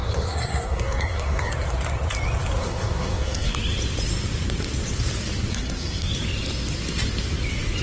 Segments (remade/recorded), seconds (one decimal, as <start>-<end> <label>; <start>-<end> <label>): 0.0-1.5 remade; 1.5-2.6 recorded; 2.6-3.5 remade; 3.5-5.5 recorded; 5.5-6.1 remade; 6.1-7.8 recorded